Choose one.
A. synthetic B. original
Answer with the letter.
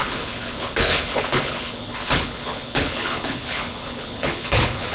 A